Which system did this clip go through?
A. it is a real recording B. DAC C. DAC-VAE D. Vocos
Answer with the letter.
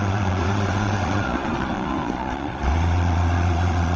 D